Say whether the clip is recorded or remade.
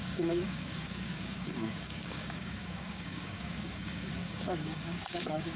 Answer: remade